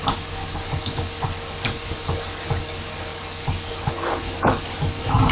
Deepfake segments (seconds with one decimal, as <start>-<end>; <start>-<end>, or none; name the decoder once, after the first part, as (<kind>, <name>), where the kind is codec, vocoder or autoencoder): 0.0-5.3 (codec, DAC)